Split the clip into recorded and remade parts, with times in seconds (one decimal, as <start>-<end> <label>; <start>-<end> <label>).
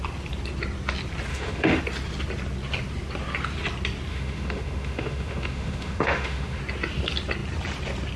0.0-1.3 recorded; 1.3-1.8 remade; 1.8-4.1 recorded; 4.1-6.6 remade; 6.6-8.2 recorded